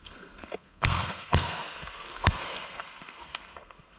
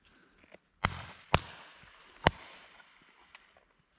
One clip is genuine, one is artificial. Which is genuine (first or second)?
second